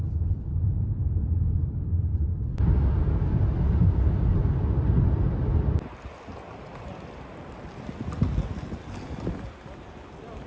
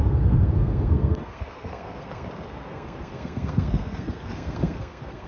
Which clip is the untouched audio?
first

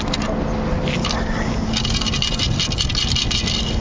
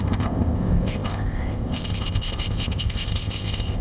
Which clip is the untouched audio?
first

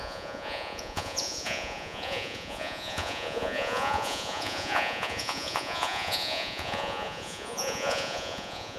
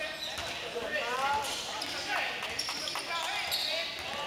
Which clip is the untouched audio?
second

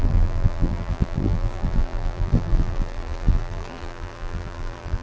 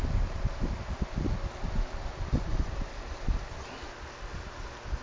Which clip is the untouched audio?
second